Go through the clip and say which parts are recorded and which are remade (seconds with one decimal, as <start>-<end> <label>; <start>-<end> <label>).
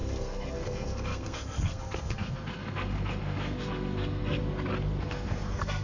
0.0-4.4 remade; 4.4-5.0 recorded; 5.0-5.8 remade